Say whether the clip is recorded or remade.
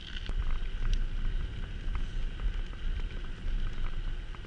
recorded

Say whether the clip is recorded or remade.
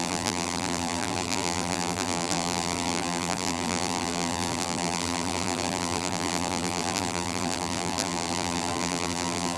remade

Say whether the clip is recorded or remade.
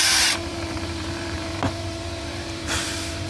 remade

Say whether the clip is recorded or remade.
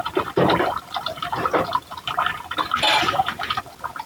remade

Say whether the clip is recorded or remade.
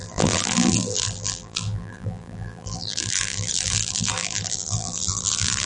remade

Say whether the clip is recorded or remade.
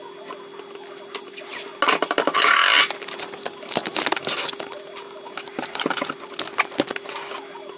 recorded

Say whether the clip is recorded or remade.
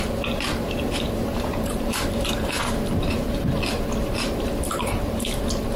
remade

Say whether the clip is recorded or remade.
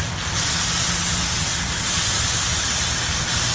recorded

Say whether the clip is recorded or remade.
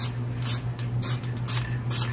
recorded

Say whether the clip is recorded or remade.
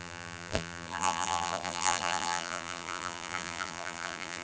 remade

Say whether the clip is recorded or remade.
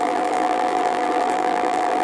remade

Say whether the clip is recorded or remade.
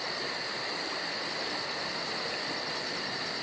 recorded